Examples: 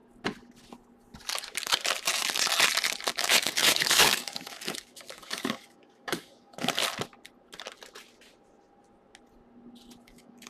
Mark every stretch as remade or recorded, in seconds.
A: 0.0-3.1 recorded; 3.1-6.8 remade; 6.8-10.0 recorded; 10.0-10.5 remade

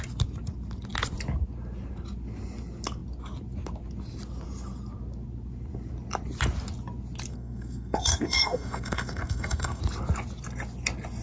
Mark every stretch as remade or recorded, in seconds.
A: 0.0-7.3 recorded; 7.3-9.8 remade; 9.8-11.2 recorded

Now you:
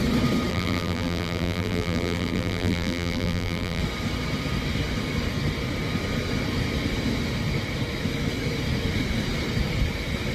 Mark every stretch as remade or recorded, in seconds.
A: 0.0-0.5 recorded; 0.5-3.8 remade; 3.8-10.3 recorded

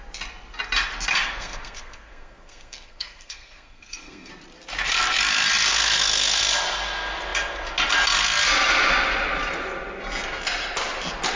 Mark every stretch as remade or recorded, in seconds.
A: 0.0-1.1 recorded; 1.1-4.3 remade; 4.3-5.7 recorded; 5.7-6.4 remade; 6.4-11.4 recorded